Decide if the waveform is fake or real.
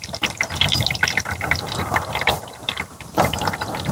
fake